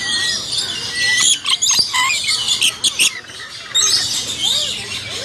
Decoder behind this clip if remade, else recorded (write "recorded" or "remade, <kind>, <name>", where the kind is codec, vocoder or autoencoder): recorded